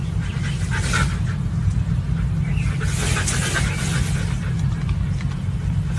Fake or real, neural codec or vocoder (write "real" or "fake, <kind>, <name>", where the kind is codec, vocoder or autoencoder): real